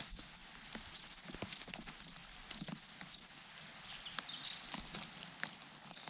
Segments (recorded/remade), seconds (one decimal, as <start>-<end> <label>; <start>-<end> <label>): 0.0-6.1 recorded